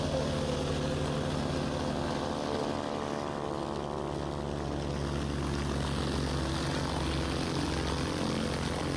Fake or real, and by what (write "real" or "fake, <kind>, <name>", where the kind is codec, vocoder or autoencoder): real